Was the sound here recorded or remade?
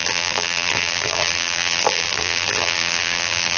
remade